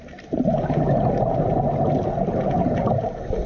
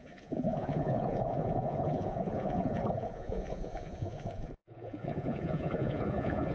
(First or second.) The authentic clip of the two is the first